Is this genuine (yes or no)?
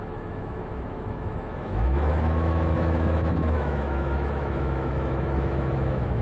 no